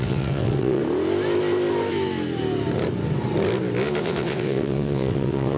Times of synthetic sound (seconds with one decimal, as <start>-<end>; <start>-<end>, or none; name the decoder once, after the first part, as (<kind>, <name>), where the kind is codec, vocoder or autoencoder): 0.0-0.8 (vocoder, WaveNeXt); 4.0-5.6